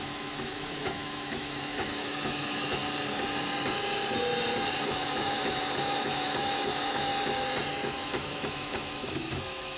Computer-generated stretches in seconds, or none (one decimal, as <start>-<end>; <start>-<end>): 0.0-2.8; 4.8-7.1; 7.7-9.8